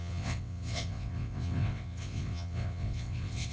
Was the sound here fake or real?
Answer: fake